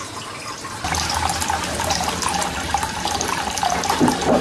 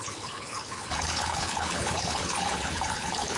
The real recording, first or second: first